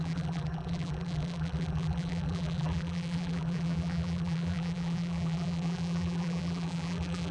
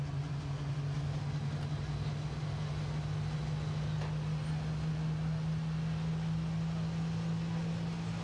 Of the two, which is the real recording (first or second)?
second